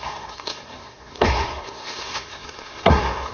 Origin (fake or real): fake